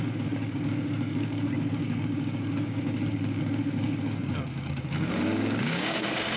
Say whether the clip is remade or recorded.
remade